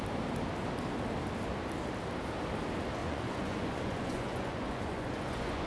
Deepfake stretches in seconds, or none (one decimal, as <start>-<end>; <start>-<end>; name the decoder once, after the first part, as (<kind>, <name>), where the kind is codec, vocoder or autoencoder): 3.0-5.7 (vocoder, Vocos)